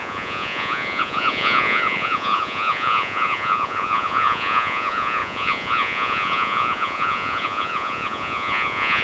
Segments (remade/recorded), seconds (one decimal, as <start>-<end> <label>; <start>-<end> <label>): 0.0-9.0 remade